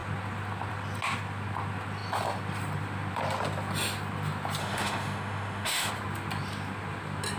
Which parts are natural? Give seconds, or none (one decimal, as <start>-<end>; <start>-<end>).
0.0-4.6; 5.9-7.4